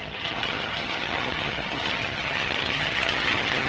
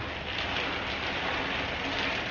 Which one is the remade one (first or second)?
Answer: first